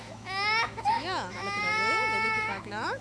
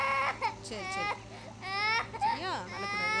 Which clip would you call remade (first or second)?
first